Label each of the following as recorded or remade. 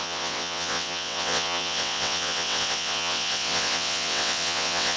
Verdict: remade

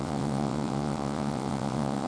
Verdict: remade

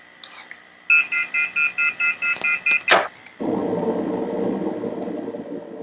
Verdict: recorded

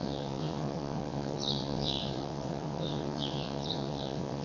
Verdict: remade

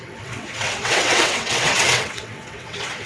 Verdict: remade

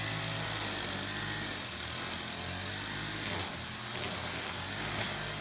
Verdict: recorded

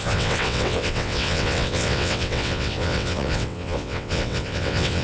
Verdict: remade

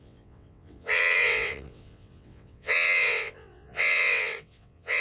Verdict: remade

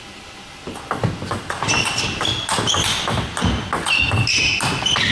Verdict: recorded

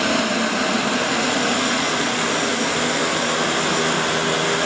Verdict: recorded